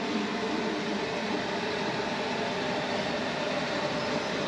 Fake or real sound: real